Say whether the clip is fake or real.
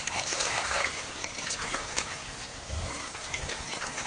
fake